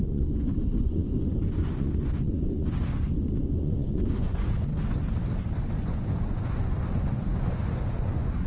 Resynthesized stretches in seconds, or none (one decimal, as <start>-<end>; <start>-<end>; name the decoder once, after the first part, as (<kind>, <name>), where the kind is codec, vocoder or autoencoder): 0.0-4.7 (vocoder, Vocos); 5.8-8.5